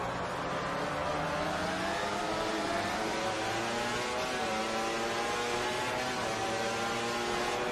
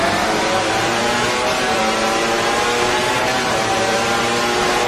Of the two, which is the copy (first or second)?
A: second